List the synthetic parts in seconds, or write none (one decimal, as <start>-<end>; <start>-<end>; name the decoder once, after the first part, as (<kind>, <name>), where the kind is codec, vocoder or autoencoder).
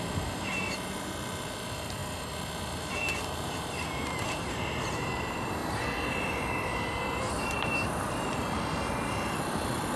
0.0-2.0 (vocoder, BigVGAN v2); 2.6-5.6; 6.3-10.0